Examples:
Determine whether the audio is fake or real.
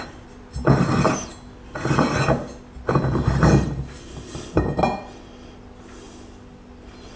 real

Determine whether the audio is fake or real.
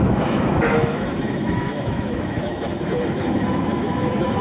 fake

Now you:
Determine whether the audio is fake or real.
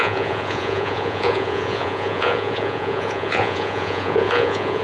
fake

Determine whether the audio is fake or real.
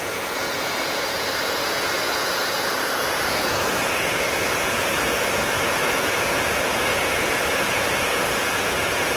fake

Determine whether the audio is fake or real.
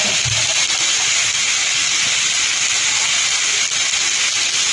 real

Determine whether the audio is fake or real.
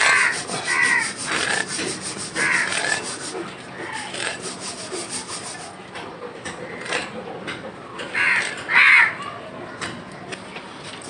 real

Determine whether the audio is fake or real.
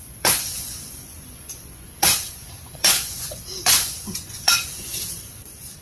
fake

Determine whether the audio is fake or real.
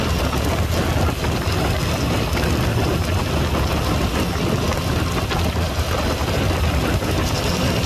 real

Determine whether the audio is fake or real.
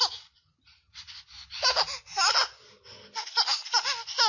real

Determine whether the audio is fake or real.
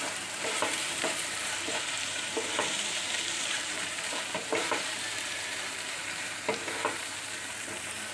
fake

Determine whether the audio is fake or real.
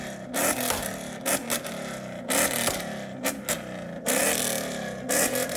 real